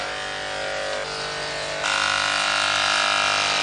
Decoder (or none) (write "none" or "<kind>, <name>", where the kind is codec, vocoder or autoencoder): none